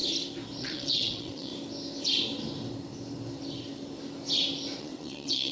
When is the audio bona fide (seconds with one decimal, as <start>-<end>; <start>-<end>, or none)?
0.0-0.6; 1.5-4.8